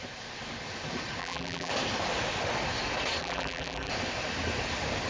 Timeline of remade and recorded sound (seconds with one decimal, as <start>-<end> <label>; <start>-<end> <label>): 0.0-1.2 recorded; 1.2-1.7 remade; 1.7-3.2 recorded; 3.2-3.9 remade; 3.9-5.1 recorded